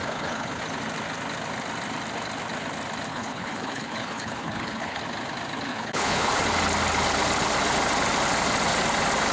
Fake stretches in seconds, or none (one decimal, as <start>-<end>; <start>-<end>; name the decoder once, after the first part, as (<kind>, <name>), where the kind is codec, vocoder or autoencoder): 0.0-0.6 (codec, HILCodec); 3.1-5.0; 5.7-6.4